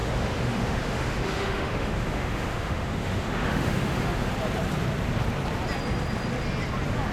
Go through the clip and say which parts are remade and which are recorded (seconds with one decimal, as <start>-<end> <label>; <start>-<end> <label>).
0.0-4.3 remade; 4.3-7.1 recorded